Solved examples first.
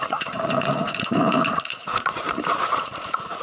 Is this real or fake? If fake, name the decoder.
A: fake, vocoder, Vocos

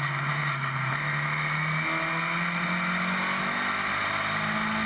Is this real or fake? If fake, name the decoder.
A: real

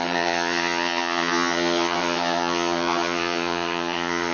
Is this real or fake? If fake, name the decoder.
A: fake, vocoder, HiFi-GAN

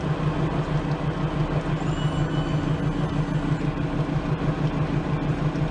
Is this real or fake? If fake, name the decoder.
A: real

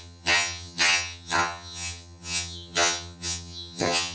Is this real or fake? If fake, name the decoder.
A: fake, vocoder, HiFi-GAN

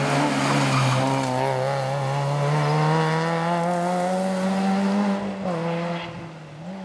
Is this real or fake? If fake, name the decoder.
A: real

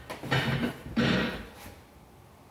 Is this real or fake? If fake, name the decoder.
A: real